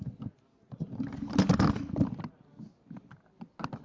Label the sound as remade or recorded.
recorded